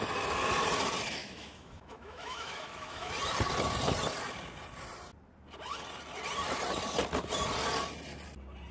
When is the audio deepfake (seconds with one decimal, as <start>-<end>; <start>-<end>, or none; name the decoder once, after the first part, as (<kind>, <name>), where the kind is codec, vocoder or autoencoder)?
1.2-3.1 (autoencoder, DAC-VAE)